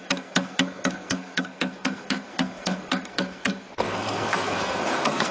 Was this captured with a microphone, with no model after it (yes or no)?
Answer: no